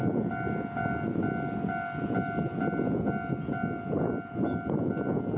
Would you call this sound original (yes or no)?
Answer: yes